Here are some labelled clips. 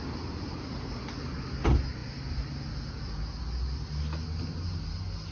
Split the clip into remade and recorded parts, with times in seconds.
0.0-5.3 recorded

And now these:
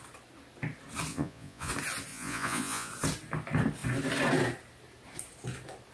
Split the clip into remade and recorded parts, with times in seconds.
0.0-1.1 recorded; 1.1-1.7 remade; 1.7-2.1 recorded; 2.1-2.9 remade; 2.9-5.9 recorded

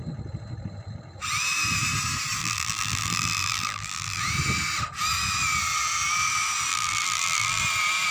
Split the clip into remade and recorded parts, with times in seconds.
0.0-2.4 recorded; 2.4-4.2 remade; 4.2-6.7 recorded; 6.7-7.6 remade; 7.6-8.1 recorded